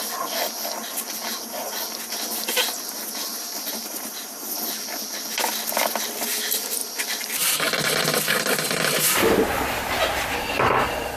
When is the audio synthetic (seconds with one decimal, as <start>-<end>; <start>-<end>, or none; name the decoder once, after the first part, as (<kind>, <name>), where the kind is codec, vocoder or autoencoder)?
3.3-4.4 (vocoder, BigVGAN v2); 6.8-9.1